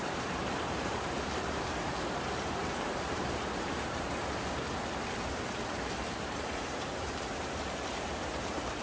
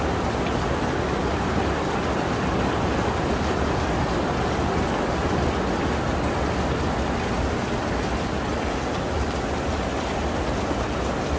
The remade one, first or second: first